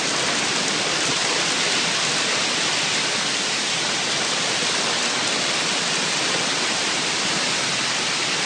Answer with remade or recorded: recorded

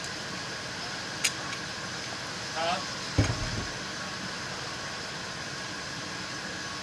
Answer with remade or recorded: recorded